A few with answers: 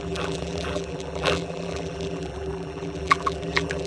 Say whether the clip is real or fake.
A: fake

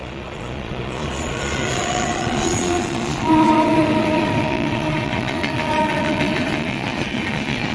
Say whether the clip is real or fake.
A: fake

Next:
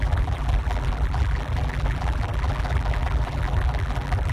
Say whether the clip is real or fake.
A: fake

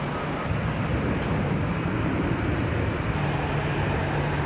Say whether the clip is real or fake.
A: real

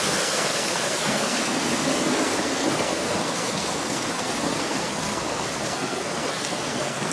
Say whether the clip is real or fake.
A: fake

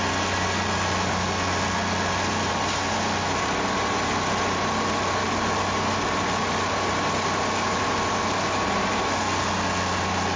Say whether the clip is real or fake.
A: real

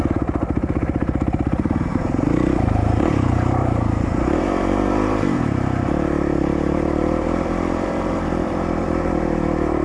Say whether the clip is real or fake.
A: fake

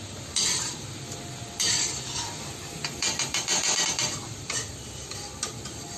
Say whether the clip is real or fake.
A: fake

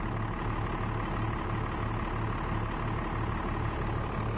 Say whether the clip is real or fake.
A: real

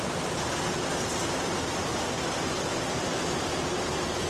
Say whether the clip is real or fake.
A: real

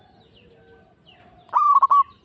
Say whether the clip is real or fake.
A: real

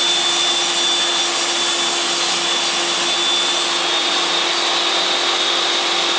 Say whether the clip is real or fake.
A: real